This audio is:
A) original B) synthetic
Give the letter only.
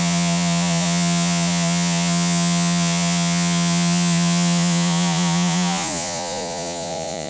B